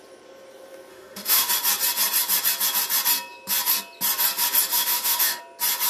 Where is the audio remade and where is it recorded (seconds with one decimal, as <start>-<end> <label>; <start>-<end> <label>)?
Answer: 0.0-0.9 recorded; 0.9-1.5 remade; 1.5-4.7 recorded; 4.7-5.4 remade; 5.4-5.9 recorded